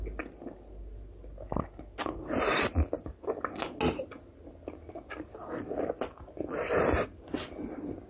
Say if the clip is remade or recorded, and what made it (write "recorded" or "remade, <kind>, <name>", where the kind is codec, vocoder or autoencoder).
recorded